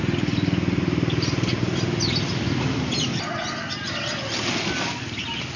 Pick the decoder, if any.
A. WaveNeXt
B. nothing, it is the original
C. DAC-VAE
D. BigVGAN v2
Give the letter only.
B